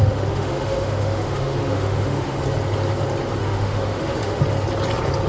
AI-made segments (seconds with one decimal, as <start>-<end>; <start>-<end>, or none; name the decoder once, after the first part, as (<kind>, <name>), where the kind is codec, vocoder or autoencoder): 0.0-2.4 (autoencoder, DAC-VAE); 3.4-4.4